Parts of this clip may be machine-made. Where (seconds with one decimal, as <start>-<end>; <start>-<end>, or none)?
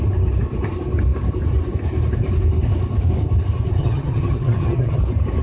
3.8-5.0